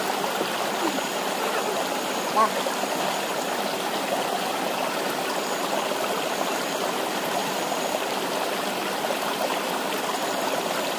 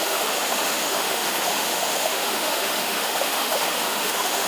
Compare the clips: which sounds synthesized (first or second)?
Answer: second